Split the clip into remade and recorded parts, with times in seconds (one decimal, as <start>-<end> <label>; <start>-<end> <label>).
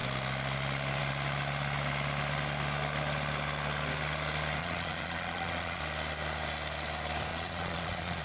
0.0-4.6 recorded; 4.6-5.8 remade; 5.8-7.3 recorded; 7.3-8.2 remade